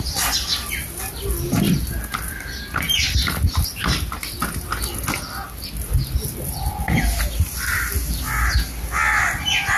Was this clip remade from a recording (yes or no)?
no